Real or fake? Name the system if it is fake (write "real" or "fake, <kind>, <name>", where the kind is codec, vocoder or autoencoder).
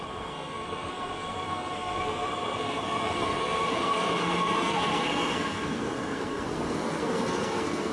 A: fake, codec, SNAC